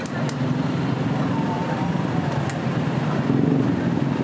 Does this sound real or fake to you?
real